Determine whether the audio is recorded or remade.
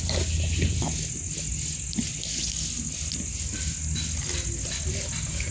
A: recorded